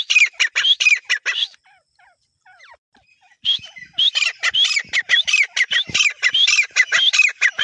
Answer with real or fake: fake